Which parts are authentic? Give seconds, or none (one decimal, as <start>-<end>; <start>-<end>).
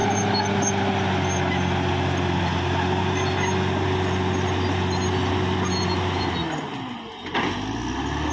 0.0-8.3